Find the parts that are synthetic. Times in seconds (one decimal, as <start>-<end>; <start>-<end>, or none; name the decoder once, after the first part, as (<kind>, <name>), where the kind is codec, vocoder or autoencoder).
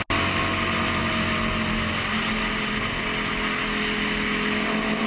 none